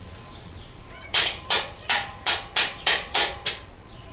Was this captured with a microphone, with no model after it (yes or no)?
no